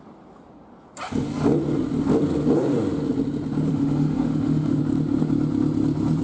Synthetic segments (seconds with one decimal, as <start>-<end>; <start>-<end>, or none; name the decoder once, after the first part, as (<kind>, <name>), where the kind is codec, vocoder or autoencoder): 3.7-4.8 (autoencoder, DAC-VAE)